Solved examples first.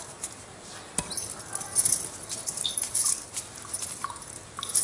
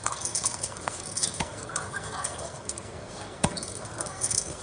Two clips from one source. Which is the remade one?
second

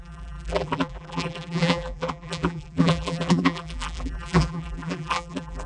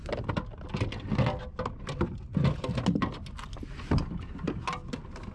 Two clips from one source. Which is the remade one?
first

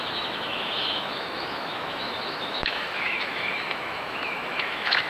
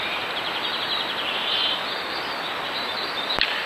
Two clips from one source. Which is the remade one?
first